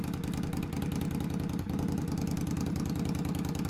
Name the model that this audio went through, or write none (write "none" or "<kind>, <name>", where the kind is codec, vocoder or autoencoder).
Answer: none